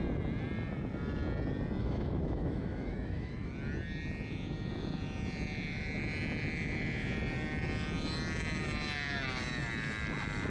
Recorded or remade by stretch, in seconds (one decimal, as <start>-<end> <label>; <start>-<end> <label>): 0.0-1.8 recorded; 1.8-3.5 remade; 3.5-10.5 recorded